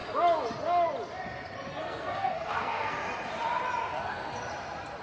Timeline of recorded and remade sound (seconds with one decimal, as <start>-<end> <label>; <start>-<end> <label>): 0.0-1.8 recorded; 1.8-3.0 remade; 3.0-3.9 recorded; 3.9-4.3 remade; 4.3-5.0 recorded

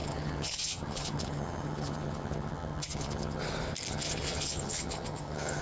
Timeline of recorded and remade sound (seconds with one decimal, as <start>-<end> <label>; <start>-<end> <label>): 0.0-3.4 remade; 3.4-3.9 recorded; 3.9-5.6 remade

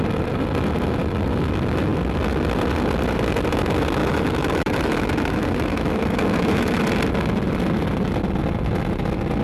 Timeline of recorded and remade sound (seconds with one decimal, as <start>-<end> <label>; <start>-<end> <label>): 0.0-4.0 recorded; 4.0-6.8 remade; 6.8-9.4 recorded